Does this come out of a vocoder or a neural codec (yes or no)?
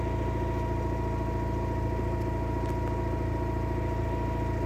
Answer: no